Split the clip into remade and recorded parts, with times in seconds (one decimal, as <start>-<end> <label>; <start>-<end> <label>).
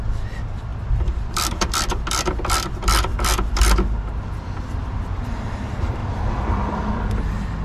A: 0.0-0.7 recorded; 0.7-2.1 remade; 2.1-6.0 recorded; 6.0-7.1 remade; 7.1-7.6 recorded